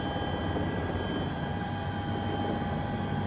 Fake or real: real